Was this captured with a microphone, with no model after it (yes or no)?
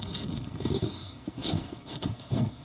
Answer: no